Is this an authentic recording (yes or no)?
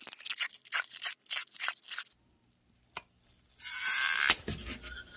yes